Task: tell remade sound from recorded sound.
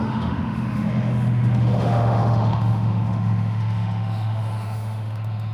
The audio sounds remade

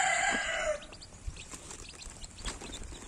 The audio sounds recorded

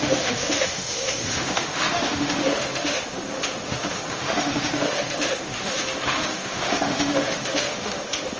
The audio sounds remade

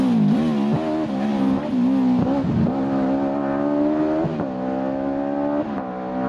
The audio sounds recorded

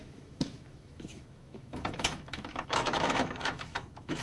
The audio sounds remade